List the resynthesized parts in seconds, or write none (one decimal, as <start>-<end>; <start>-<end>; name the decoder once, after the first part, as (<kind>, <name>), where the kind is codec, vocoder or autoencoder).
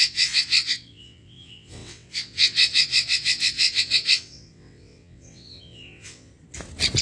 0.0-6.3 (vocoder, WaveNeXt)